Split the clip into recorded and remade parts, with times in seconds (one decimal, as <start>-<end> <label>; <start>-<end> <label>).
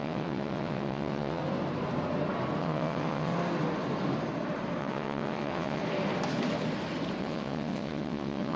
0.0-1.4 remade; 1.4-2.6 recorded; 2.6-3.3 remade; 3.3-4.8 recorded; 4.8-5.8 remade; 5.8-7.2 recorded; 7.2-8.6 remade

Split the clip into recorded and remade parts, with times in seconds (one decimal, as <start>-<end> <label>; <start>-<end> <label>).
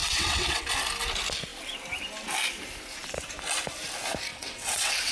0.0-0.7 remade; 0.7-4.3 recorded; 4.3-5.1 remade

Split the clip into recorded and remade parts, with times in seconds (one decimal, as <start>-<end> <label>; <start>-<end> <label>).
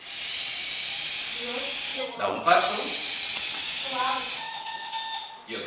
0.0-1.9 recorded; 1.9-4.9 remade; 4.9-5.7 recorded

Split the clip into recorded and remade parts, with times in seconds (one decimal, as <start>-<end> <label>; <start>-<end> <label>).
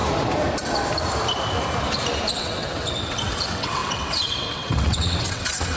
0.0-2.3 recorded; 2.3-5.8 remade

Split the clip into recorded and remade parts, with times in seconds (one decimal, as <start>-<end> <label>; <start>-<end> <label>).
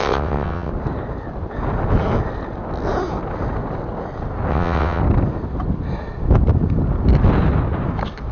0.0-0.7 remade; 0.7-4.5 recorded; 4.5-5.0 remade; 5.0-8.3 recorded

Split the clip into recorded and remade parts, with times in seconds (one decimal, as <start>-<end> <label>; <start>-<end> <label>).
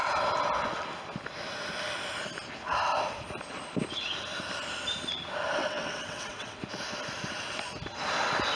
0.0-5.6 recorded; 5.6-6.6 remade; 6.6-8.6 recorded